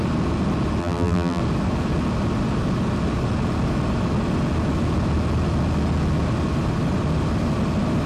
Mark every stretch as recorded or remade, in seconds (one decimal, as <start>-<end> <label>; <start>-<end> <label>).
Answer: 0.0-0.8 recorded; 0.8-1.4 remade; 1.4-8.1 recorded